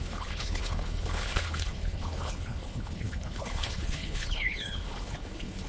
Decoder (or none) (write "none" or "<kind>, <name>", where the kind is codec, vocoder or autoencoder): codec, HILCodec